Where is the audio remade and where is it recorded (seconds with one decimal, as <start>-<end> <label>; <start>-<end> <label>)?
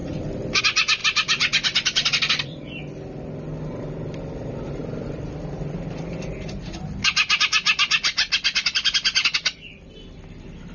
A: 0.0-0.6 remade; 0.6-1.0 recorded; 1.0-2.8 remade; 2.8-10.7 recorded